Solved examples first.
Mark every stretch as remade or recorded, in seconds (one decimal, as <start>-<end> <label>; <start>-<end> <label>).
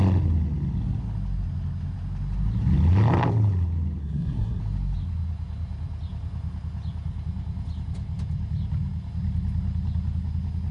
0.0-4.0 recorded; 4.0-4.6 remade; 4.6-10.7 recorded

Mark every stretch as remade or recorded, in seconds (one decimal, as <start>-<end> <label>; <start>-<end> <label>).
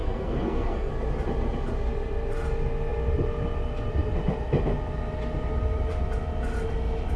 0.0-0.9 remade; 0.9-7.2 recorded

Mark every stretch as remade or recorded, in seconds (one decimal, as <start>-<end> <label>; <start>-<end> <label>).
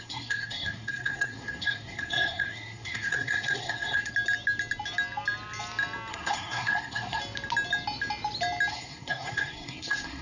0.0-4.1 remade; 4.1-6.1 recorded; 6.1-7.2 remade; 7.2-8.7 recorded; 8.7-10.2 remade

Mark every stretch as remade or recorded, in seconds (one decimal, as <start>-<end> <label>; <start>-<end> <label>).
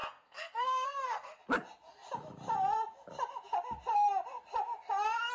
0.0-1.4 remade; 1.4-5.3 recorded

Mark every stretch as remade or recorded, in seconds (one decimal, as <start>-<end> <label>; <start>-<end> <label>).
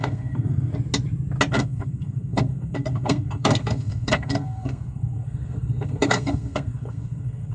0.0-0.7 remade; 0.7-1.5 recorded; 1.5-7.5 remade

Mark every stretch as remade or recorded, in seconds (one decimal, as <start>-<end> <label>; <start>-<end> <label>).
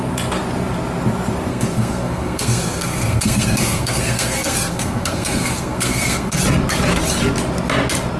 0.0-1.5 recorded; 1.5-6.4 remade; 6.4-8.2 recorded